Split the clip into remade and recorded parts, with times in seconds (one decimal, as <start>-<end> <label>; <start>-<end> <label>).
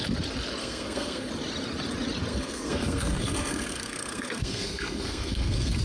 0.0-0.6 recorded; 0.6-1.3 remade; 1.3-2.3 recorded; 2.3-5.8 remade